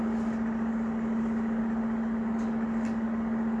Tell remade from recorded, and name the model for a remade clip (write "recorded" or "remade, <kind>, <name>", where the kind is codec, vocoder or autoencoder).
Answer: recorded